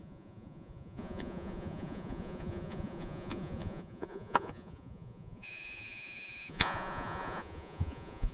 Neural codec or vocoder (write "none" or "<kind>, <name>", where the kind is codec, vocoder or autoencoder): vocoder, Vocos